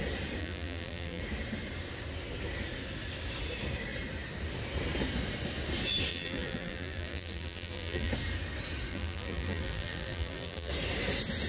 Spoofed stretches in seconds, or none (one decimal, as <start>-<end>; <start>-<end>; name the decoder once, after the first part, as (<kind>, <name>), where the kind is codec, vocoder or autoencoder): 0.4-1.2 (vocoder, BigVGAN v2); 6.1-8.1; 8.9-10.7